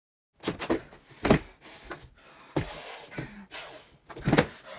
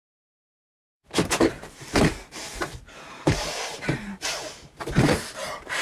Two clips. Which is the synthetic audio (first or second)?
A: second